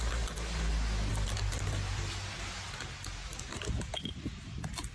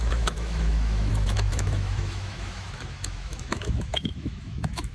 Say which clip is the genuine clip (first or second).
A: first